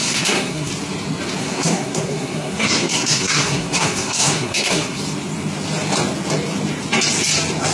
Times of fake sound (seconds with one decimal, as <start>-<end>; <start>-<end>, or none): 0.0-0.7; 1.4-5.0